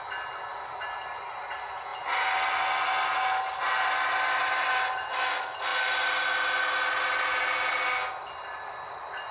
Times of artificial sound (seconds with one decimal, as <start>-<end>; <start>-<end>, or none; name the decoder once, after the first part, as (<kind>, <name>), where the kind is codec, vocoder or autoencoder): none

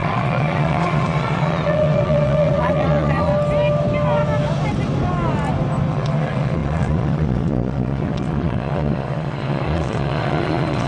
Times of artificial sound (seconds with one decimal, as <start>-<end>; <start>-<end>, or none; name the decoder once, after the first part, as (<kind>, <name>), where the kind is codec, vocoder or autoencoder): 0.0-3.3 (vocoder, Vocos); 5.9-10.9